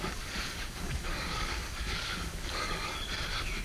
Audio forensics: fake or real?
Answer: fake